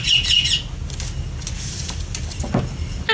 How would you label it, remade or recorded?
recorded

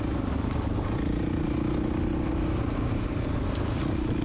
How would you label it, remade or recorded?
recorded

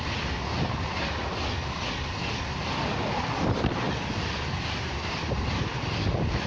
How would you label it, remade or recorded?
recorded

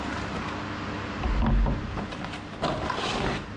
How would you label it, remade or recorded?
recorded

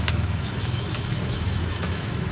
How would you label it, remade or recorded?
remade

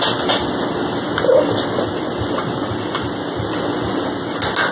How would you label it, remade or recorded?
recorded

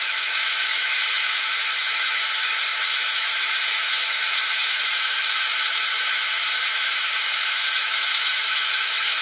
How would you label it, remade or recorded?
remade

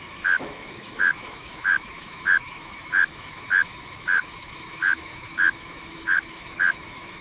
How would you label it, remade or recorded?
remade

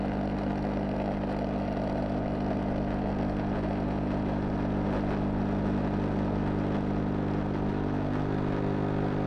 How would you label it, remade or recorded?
recorded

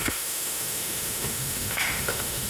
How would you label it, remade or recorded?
remade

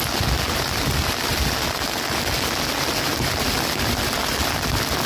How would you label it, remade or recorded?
recorded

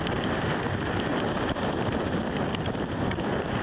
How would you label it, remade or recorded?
recorded